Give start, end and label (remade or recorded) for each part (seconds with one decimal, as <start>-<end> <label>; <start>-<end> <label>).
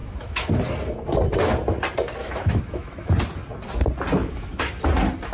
0.0-0.5 remade; 0.5-2.2 recorded; 2.2-3.1 remade; 3.1-4.2 recorded; 4.2-4.7 remade; 4.7-5.3 recorded